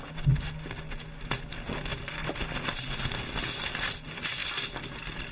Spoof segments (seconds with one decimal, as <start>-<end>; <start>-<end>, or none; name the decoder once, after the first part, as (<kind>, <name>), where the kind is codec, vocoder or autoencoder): none